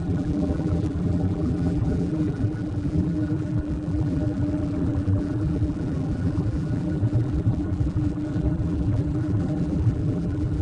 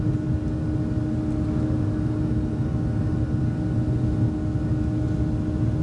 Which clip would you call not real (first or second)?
first